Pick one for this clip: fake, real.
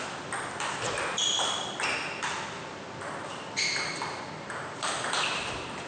real